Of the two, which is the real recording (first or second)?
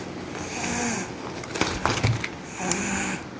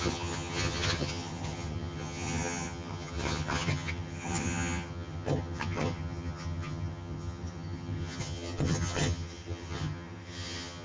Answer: first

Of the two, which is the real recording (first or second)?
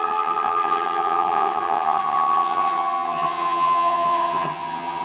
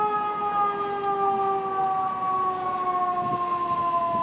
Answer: second